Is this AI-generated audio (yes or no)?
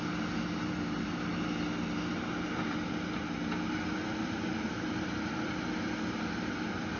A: no